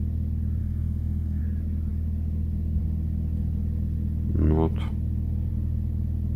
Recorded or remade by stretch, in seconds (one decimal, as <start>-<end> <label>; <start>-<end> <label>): 0.0-0.6 recorded; 0.6-1.4 remade; 1.4-6.4 recorded